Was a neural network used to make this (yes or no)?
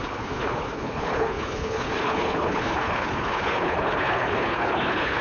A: yes